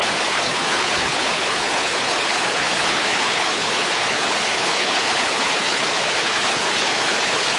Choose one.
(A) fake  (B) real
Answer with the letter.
A